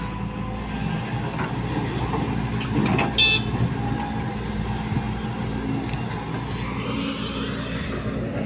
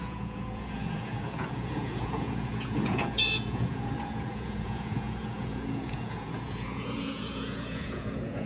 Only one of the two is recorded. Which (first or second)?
first